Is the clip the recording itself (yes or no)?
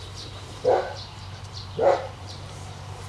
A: no